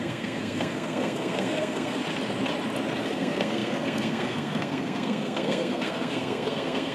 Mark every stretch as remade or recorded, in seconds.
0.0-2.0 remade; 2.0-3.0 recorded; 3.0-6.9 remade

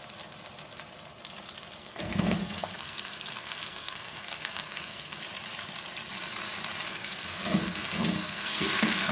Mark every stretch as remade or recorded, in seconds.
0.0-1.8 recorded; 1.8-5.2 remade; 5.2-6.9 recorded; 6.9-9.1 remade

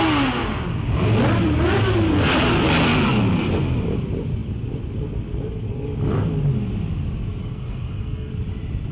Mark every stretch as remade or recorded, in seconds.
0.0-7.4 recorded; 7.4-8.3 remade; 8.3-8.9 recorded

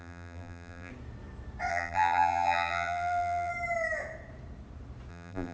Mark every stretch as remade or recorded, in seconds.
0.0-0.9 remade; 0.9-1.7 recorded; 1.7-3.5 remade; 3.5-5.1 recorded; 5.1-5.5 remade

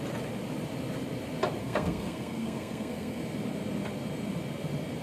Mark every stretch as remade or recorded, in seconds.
0.0-1.6 recorded; 1.6-3.2 remade; 3.2-5.0 recorded